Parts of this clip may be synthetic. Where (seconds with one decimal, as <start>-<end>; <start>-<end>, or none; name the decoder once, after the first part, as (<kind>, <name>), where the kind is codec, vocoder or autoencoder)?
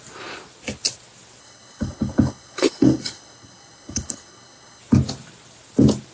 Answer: 1.4-4.8 (codec, HILCodec)